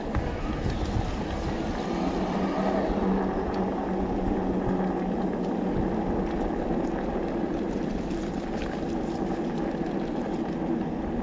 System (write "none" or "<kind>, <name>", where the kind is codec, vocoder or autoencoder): none